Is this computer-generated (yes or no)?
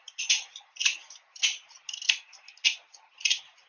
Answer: no